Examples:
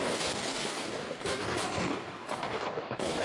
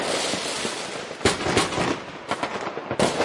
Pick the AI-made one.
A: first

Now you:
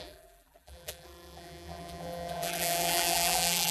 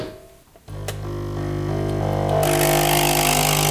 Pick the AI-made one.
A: first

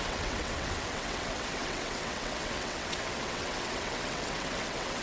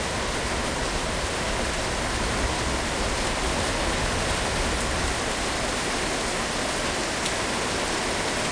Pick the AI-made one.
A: first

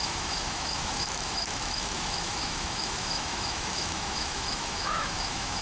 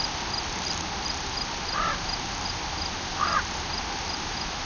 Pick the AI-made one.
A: first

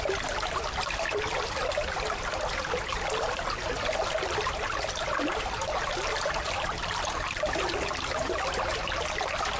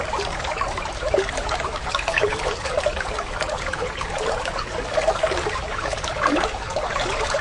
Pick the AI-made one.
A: second